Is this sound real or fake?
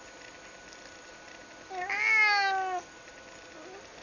real